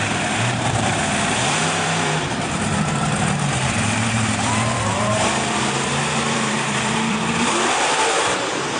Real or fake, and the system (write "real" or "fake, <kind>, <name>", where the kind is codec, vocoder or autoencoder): fake, vocoder, BigVGAN v2